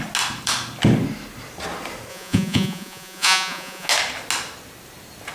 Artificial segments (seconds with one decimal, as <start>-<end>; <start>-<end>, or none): 2.1-3.9